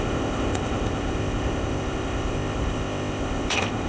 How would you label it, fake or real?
fake